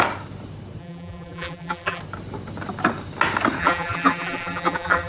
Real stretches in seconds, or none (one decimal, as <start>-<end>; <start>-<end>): 0.0-0.8; 2.0-3.6